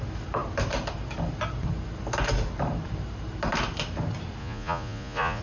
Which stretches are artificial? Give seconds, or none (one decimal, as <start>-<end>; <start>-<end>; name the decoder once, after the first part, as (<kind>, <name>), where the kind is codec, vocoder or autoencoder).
4.4-5.4 (vocoder, Vocos)